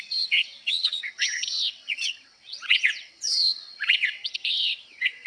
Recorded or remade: remade